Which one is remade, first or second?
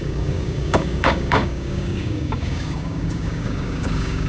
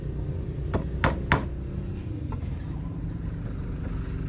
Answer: first